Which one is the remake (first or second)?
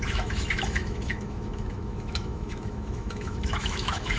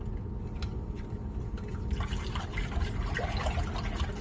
first